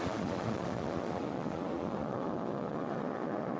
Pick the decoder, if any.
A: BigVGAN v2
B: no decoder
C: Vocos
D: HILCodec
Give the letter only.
C